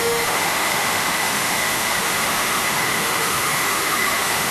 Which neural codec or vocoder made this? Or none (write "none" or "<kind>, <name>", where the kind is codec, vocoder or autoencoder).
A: autoencoder, DAC-VAE